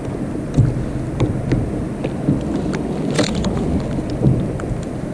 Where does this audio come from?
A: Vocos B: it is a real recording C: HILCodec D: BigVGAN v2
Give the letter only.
B